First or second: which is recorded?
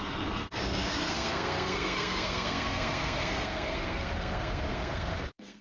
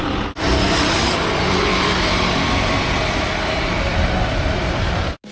second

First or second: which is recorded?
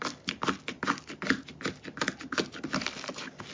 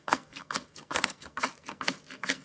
first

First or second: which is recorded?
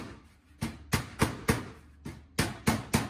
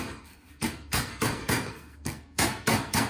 first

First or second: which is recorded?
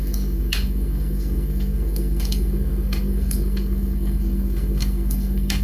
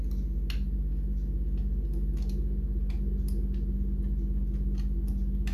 second